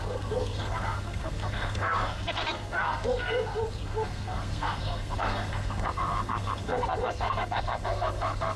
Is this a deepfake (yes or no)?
yes